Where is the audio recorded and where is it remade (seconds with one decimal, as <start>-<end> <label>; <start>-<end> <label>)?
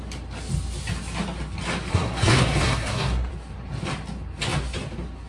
0.0-1.9 recorded; 1.9-3.3 remade; 3.3-5.3 recorded